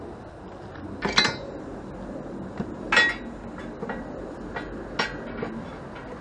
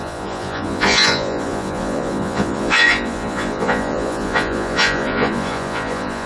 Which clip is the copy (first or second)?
second